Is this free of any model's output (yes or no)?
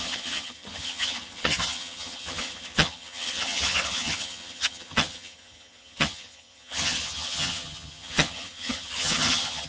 no